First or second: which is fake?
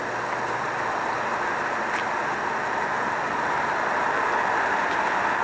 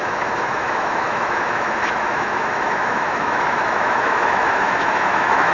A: second